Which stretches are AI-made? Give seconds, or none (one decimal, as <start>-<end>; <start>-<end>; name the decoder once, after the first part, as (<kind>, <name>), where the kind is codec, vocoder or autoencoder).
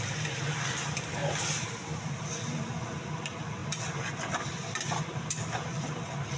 1.2-2.7 (vocoder, BigVGAN v2); 5.1-6.4